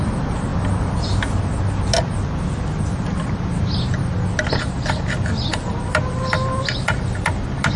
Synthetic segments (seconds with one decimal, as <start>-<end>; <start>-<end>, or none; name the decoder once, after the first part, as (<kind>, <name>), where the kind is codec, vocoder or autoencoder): none